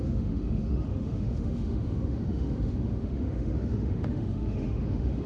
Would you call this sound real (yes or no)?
no